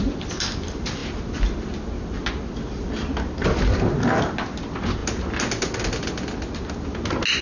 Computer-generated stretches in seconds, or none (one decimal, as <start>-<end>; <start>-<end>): none